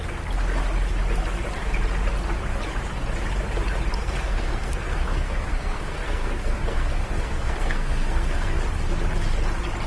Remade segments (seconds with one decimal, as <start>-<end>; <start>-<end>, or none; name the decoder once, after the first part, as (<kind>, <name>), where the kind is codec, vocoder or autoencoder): 4.0-8.6 (codec, SNAC)